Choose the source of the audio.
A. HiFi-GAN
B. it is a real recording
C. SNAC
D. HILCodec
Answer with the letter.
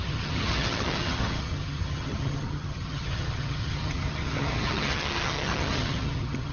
A